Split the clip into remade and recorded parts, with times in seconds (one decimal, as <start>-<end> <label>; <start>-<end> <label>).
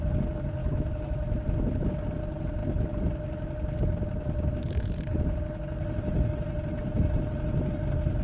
0.0-0.6 recorded; 0.6-1.9 remade; 1.9-8.2 recorded